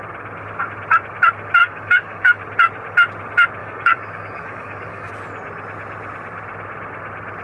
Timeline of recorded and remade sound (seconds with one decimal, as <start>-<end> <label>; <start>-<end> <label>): 0.0-1.6 recorded; 1.6-2.4 remade; 2.4-3.6 recorded; 3.6-5.1 remade; 5.1-7.4 recorded